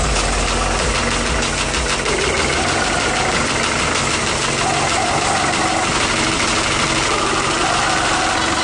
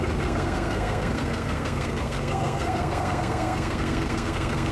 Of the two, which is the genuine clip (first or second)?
first